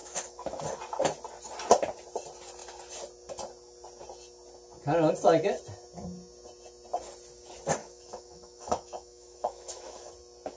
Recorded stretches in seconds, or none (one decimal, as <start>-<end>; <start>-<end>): 0.6-7.8; 10.1-10.6